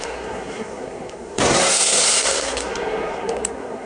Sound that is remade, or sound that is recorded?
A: remade